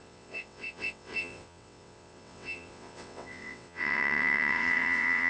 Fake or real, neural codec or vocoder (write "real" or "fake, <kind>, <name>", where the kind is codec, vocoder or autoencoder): fake, vocoder, WaveNeXt